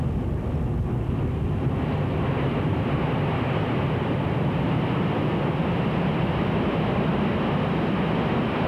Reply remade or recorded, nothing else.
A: recorded